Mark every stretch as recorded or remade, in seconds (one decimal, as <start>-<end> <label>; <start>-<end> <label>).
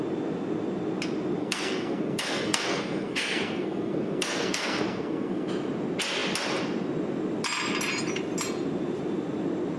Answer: 0.0-1.4 recorded; 1.4-5.5 remade; 5.5-9.8 recorded